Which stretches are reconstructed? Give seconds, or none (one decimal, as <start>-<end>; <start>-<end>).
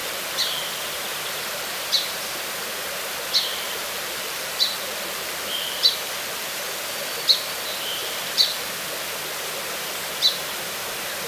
0.0-0.6; 3.5-6.8; 8.0-8.7